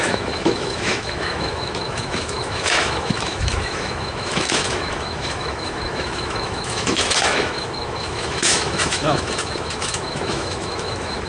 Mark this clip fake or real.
fake